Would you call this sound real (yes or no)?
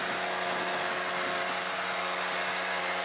yes